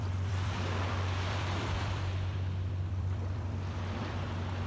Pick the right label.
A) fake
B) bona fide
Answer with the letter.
A